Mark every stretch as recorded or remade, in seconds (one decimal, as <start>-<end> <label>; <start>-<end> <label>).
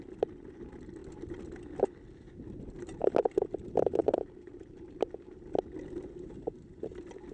0.0-4.0 recorded; 4.0-5.5 remade; 5.5-7.3 recorded